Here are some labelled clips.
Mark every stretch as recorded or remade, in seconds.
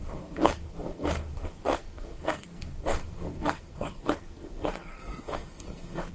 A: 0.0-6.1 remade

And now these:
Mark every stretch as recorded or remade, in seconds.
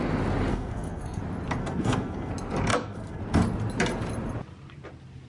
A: 0.0-0.5 recorded; 0.5-1.2 remade; 1.2-1.6 recorded; 1.6-2.3 remade; 2.3-2.7 recorded; 2.7-3.2 remade; 3.2-5.3 recorded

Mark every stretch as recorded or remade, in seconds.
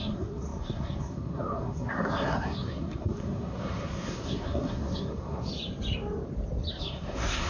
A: 0.0-5.5 remade; 5.5-6.8 recorded; 6.8-7.5 remade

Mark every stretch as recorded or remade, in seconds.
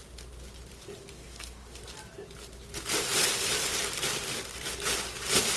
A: 0.0-1.2 recorded; 1.2-1.8 remade; 1.8-5.6 recorded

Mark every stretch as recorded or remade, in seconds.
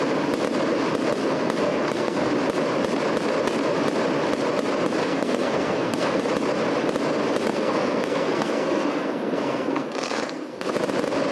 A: 0.0-1.2 recorded; 1.2-2.3 remade; 2.3-5.0 recorded; 5.0-6.2 remade; 6.2-7.5 recorded; 7.5-10.7 remade; 10.7-11.3 recorded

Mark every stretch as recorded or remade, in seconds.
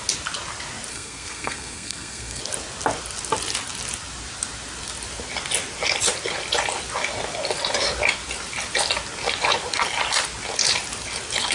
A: 0.0-0.9 recorded; 0.9-2.4 remade; 2.4-11.5 recorded